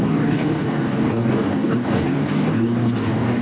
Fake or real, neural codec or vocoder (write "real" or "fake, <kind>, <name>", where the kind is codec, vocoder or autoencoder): fake, codec, DAC